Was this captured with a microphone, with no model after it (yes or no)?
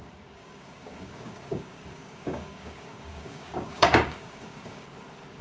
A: no